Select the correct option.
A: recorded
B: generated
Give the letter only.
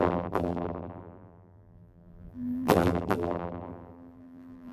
B